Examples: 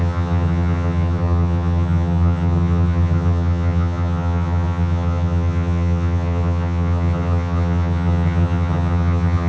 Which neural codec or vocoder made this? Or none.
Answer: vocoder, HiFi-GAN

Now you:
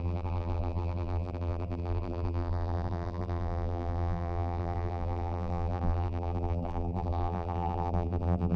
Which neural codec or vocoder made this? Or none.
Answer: vocoder, BigVGAN v2